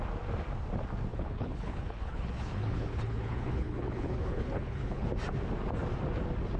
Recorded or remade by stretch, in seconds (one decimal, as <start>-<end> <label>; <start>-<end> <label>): 0.0-1.1 recorded; 1.1-5.1 remade; 5.1-6.6 recorded